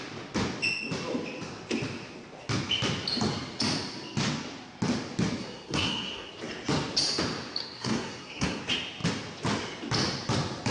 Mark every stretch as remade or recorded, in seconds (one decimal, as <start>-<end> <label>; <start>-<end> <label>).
0.0-5.4 recorded; 5.4-6.3 remade; 6.3-7.6 recorded; 7.6-8.6 remade; 8.6-10.7 recorded